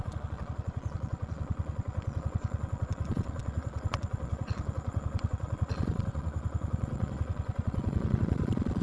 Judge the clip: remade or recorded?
remade